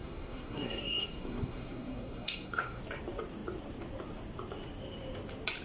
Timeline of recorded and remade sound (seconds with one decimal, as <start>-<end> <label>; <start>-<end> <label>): 0.0-2.8 remade; 2.8-5.6 recorded

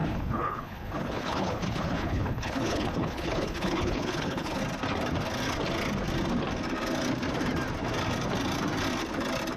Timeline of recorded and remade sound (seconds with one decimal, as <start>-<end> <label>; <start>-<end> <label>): 0.0-4.6 remade; 4.6-9.6 recorded

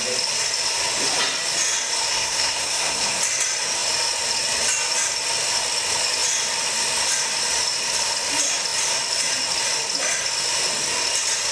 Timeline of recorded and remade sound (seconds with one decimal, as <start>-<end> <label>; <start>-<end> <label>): 0.0-2.1 recorded; 2.1-3.2 remade; 3.2-11.5 recorded

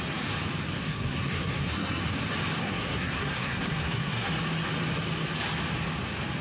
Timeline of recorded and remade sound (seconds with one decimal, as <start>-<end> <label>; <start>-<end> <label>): 0.0-0.8 recorded; 0.8-2.0 remade; 2.0-2.6 recorded; 2.6-4.3 remade; 4.3-6.4 recorded

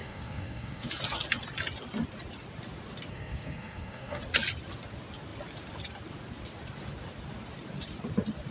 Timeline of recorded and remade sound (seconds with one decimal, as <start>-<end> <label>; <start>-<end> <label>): 0.0-0.9 remade; 0.9-3.1 recorded; 3.1-4.2 remade; 4.2-8.5 recorded

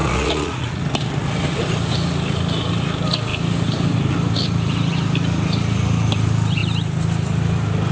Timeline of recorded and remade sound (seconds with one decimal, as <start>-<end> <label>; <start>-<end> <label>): 0.0-0.8 remade; 0.8-7.9 recorded

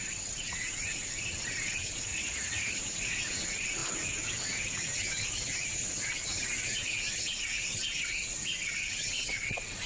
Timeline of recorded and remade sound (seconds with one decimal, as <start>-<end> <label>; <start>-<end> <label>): 0.0-2.1 remade; 2.1-2.7 recorded; 2.7-9.9 remade

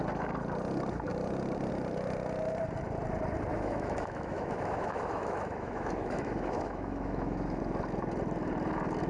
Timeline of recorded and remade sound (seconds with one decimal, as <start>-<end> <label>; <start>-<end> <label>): 0.0-3.5 recorded; 3.5-7.6 remade; 7.6-9.1 recorded